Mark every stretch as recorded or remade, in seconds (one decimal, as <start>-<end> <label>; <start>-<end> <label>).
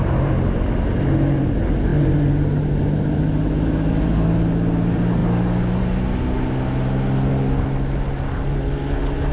0.0-9.3 recorded